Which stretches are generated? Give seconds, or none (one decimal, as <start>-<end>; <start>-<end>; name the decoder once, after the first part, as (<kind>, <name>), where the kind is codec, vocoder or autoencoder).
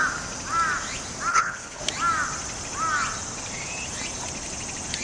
1.3-1.8 (codec, HILCodec)